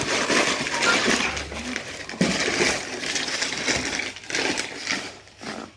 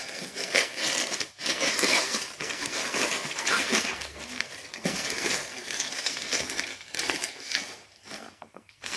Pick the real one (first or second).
first